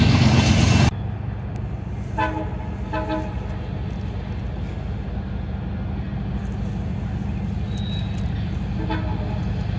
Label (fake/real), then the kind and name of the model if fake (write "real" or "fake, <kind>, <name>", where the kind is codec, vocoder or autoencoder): real